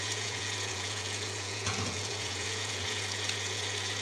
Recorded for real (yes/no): no